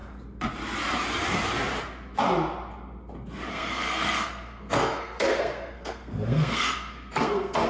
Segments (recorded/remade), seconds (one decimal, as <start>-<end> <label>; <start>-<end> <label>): 0.0-3.5 recorded; 3.5-7.7 remade